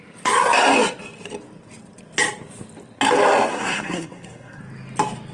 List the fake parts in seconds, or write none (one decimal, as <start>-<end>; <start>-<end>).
3.5-4.6